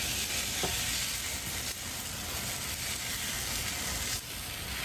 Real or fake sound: real